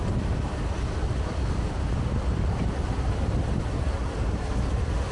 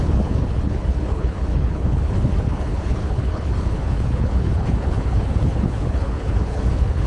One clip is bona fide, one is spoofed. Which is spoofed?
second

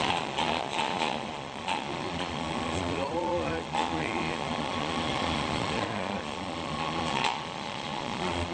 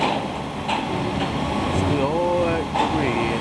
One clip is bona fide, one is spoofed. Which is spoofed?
first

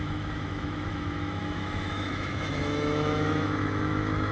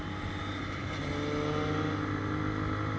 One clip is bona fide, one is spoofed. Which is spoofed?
first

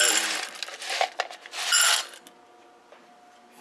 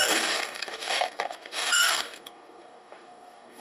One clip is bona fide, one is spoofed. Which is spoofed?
second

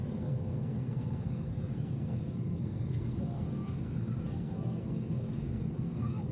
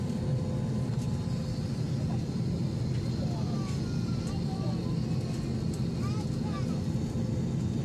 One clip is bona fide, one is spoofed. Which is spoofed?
first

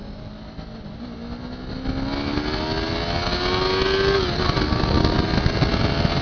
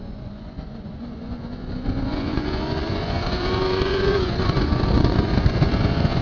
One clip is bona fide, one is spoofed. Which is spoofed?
second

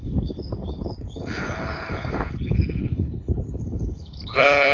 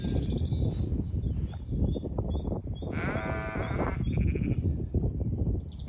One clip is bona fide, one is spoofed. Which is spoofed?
first